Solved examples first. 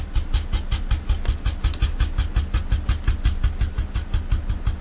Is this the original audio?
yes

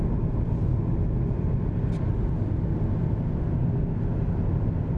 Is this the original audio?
yes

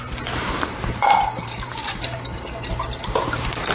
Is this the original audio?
no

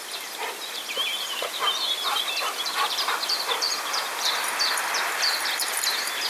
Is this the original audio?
no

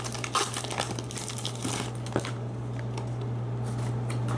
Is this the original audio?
yes